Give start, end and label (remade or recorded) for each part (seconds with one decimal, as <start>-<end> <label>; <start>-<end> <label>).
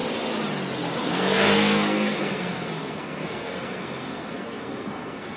0.0-1.1 recorded; 1.1-5.4 remade